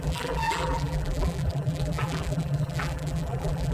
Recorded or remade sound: remade